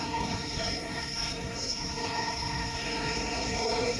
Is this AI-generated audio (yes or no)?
yes